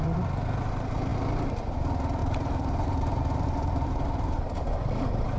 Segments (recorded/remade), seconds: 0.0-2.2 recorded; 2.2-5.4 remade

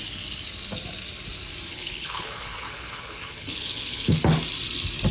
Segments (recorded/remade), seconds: 0.0-1.7 recorded; 1.7-4.2 remade; 4.2-5.1 recorded

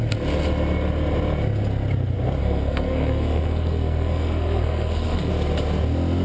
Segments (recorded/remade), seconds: 0.0-2.4 recorded; 2.4-5.3 remade; 5.3-6.2 recorded

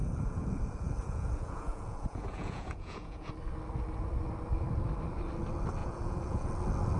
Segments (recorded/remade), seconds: 0.0-3.3 remade; 3.3-5.8 recorded; 5.8-6.5 remade; 6.5-7.0 recorded

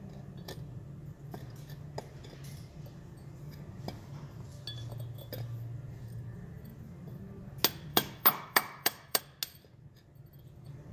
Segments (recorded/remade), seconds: 0.0-7.9 recorded; 7.9-9.2 remade; 9.2-10.9 recorded

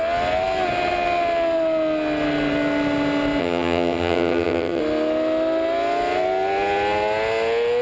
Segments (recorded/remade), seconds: 0.0-3.4 recorded; 3.4-4.8 remade; 4.8-7.8 recorded